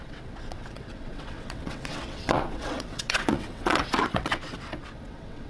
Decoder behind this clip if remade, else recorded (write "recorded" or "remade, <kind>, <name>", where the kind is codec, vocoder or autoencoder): remade, vocoder, WaveNeXt